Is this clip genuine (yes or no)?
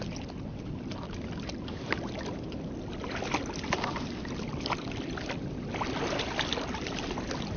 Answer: yes